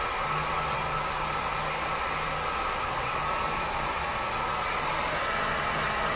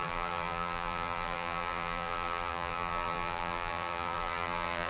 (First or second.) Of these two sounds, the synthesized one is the second